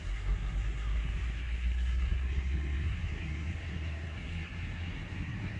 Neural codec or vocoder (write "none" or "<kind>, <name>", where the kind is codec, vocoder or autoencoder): codec, SNAC